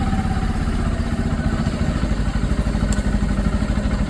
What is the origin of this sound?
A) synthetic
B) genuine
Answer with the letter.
B